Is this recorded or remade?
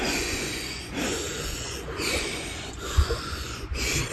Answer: remade